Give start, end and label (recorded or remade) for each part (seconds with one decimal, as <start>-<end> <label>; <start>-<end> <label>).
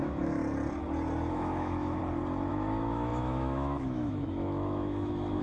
0.0-0.4 remade; 0.4-1.3 recorded; 1.3-2.0 remade; 2.0-2.5 recorded; 2.5-5.4 remade